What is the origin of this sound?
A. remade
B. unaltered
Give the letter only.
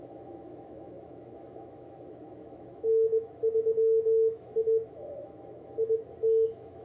A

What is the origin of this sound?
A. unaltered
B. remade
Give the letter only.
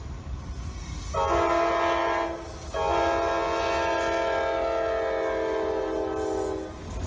A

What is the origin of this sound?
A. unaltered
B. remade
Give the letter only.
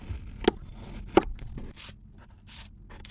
A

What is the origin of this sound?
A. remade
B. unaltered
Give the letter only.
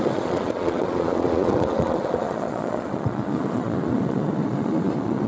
A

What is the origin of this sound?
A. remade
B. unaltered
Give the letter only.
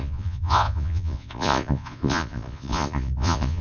A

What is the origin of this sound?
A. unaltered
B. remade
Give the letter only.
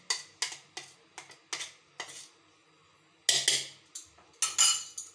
A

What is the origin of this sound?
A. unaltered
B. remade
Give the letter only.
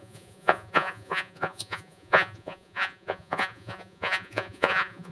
B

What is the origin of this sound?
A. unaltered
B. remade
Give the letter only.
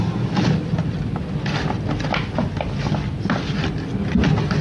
A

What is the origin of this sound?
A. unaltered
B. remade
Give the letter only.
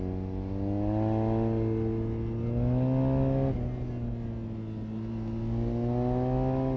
A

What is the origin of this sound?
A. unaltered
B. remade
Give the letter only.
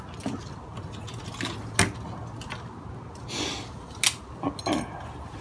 A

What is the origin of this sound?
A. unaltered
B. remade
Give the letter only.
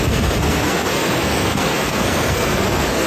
B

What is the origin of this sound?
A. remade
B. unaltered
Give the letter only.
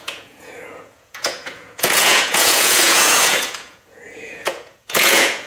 A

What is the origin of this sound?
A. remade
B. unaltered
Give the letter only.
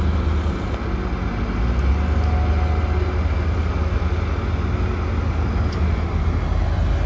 B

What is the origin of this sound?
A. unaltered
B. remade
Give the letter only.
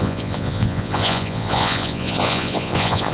B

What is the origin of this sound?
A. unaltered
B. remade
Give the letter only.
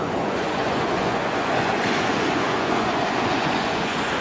B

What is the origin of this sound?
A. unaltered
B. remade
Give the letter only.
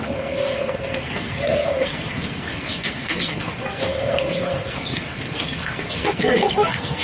B